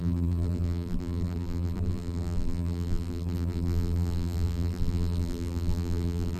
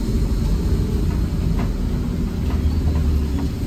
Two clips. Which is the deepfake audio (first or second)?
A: first